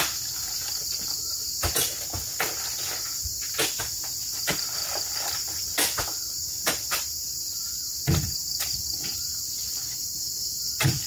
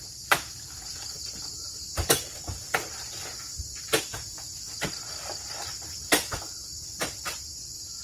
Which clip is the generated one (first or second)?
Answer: second